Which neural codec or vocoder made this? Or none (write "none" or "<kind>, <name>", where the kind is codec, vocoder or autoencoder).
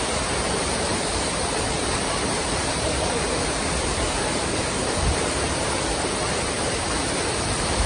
vocoder, BigVGAN v2